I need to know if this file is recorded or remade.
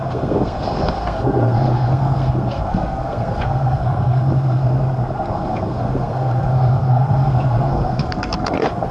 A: remade